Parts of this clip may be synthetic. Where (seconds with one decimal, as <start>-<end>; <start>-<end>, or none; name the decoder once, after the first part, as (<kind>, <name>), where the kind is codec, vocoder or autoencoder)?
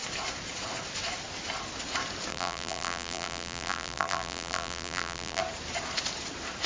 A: 2.3-5.4 (vocoder, BigVGAN v2)